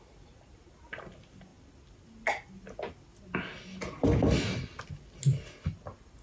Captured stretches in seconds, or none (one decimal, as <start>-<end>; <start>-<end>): 0.0-6.2